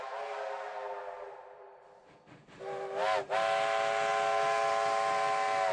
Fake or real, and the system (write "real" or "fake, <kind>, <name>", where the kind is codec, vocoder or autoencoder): real